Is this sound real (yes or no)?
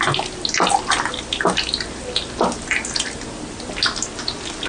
yes